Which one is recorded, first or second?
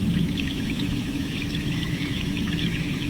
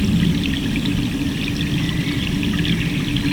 second